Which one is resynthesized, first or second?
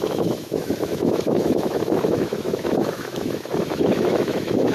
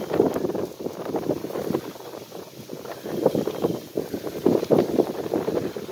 first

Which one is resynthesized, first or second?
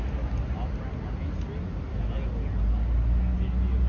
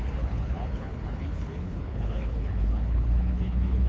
second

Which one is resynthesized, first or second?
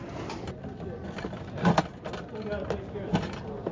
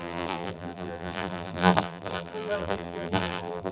second